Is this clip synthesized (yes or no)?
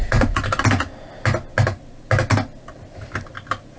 no